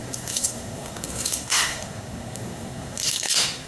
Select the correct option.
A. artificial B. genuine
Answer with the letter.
A